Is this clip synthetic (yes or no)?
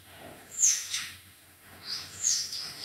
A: yes